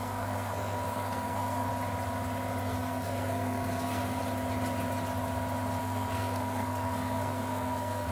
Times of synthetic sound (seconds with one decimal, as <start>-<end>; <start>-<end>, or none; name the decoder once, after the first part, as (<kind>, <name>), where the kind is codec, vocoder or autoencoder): 0.0-1.7 (codec, SNAC); 2.6-4.2; 5.8-8.1